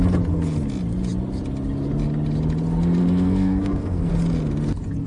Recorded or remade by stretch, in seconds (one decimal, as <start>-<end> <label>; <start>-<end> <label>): 0.0-3.0 recorded; 3.0-4.1 remade; 4.1-5.1 recorded